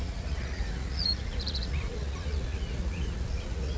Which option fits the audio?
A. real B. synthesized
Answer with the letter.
B